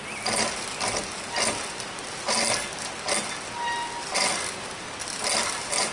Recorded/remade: recorded